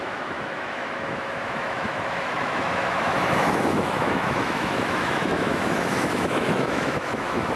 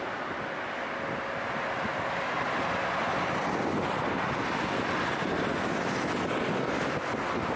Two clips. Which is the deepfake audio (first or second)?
first